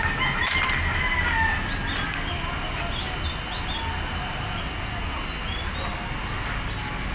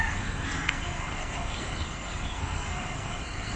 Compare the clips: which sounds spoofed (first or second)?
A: second